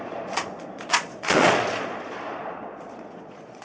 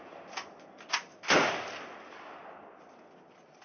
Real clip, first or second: second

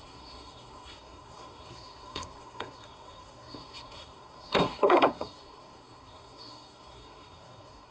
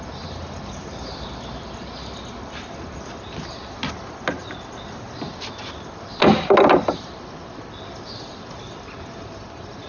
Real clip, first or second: second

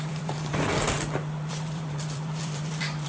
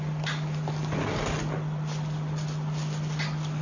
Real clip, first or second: second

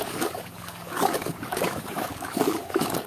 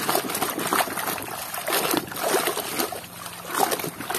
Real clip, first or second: second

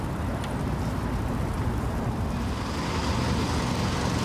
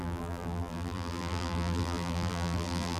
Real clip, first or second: first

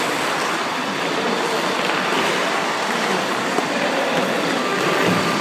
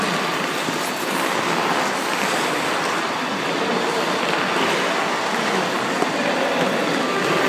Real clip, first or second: second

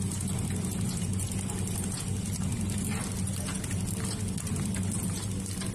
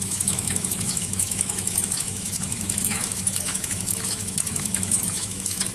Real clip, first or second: first